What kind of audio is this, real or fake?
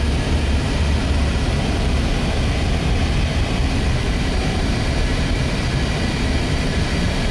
real